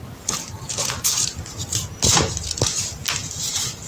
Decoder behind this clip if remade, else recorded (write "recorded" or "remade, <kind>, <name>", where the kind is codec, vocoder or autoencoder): recorded